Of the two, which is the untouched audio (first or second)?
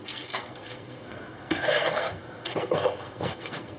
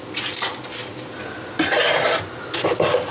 second